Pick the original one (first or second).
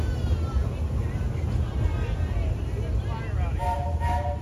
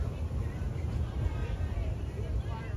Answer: first